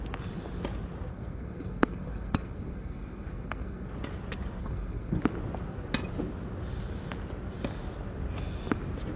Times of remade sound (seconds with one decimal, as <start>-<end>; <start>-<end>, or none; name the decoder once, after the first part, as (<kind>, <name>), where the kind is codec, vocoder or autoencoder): 1.1-3.9 (codec, SNAC); 4.6-5.2